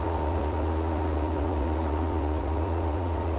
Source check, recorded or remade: remade